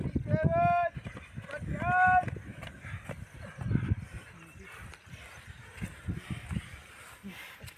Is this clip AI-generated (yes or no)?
no